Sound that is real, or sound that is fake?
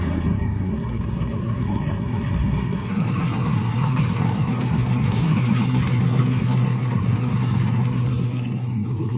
fake